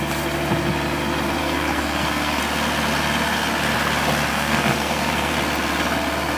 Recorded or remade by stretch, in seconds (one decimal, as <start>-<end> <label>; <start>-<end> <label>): 0.0-1.4 recorded; 1.4-2.4 remade; 2.4-4.3 recorded; 4.3-5.3 remade; 5.3-6.4 recorded